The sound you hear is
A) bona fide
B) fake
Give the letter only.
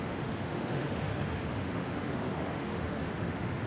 B